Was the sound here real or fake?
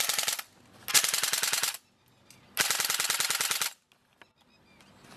real